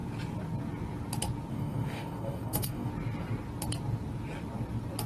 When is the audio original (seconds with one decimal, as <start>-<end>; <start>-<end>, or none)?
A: 0.0-1.5; 2.9-5.1